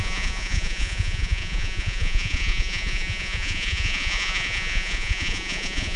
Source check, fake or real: fake